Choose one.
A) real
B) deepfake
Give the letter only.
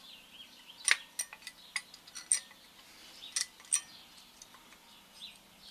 A